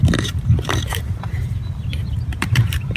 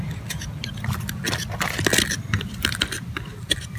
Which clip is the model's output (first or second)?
first